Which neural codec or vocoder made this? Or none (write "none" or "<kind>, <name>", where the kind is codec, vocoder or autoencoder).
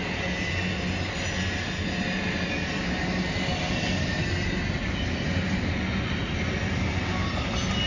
none